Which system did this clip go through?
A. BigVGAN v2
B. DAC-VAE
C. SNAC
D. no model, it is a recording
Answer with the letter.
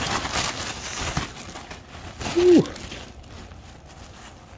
D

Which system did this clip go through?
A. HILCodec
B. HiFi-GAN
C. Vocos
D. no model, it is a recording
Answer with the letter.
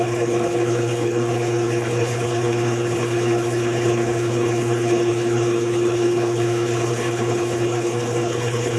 A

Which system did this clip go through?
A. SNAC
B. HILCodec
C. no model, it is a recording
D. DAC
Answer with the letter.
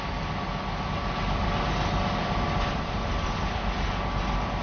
C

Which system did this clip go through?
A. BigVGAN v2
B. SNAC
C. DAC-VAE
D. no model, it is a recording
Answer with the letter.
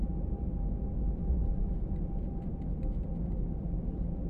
D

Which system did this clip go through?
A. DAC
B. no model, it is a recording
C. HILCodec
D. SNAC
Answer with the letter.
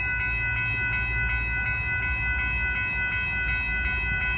B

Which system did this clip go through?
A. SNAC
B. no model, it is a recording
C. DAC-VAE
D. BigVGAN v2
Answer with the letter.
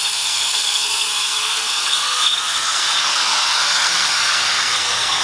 A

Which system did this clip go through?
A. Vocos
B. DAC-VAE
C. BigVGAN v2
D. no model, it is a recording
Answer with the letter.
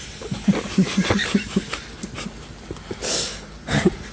D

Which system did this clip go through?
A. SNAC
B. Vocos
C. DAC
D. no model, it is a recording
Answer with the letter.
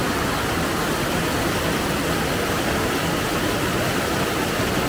D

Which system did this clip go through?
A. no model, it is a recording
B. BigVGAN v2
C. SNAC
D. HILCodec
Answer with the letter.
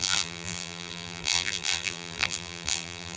B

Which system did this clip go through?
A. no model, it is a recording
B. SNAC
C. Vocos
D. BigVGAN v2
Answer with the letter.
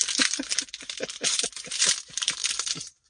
A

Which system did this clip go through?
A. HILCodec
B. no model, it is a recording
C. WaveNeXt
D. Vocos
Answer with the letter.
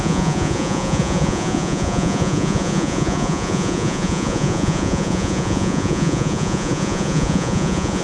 D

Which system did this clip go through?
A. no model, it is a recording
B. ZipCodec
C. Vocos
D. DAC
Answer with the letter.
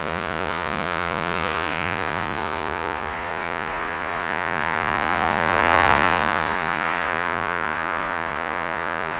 C